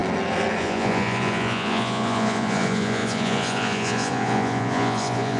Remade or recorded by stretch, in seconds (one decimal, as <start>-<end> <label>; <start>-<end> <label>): 0.0-0.6 recorded; 0.6-5.4 remade